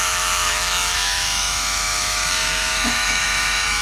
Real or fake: fake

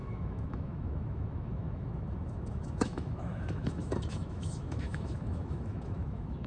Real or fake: fake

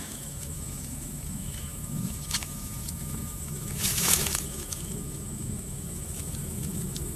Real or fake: fake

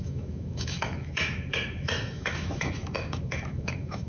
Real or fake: fake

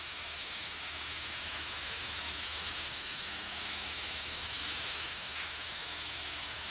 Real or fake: fake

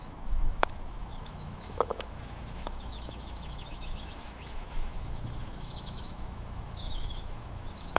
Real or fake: fake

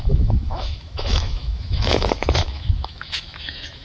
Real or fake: fake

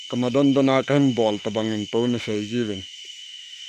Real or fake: fake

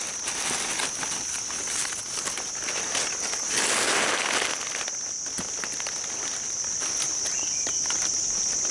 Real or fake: real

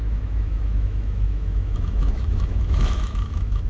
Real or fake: fake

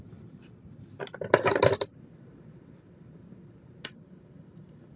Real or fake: real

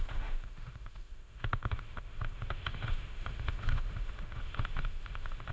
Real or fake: fake